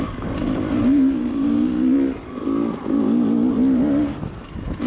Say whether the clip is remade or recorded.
recorded